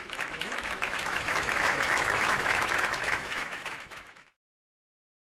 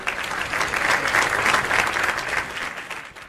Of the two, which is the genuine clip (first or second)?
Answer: second